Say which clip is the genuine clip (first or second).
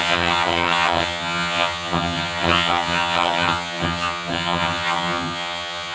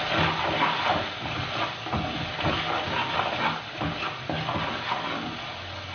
second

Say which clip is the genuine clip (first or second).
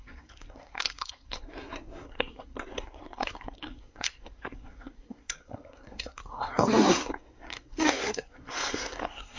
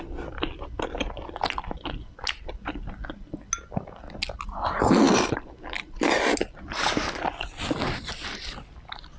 second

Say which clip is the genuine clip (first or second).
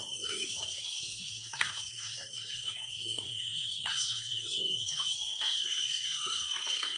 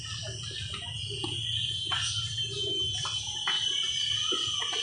second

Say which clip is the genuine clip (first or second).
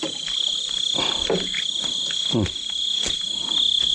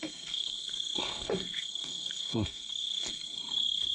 first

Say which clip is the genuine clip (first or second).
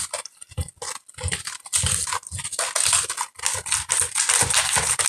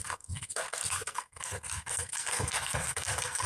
first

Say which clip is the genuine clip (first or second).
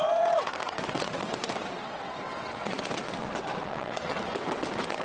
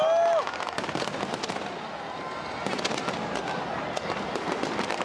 second